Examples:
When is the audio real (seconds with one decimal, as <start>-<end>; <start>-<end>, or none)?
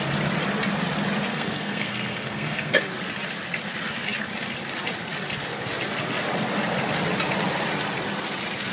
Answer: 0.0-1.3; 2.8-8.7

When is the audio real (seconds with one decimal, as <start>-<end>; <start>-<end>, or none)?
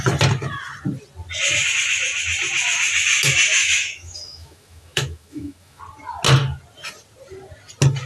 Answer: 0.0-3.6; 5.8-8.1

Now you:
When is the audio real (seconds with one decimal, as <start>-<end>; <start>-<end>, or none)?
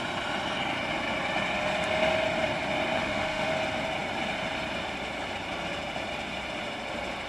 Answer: 0.0-3.0; 3.5-7.3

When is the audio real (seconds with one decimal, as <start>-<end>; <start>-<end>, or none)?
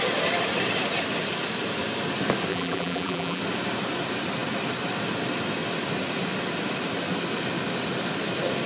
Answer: 0.0-2.5; 3.4-8.7